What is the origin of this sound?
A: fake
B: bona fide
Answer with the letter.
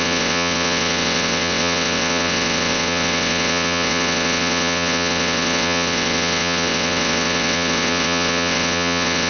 A